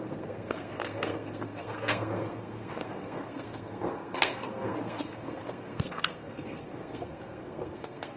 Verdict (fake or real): fake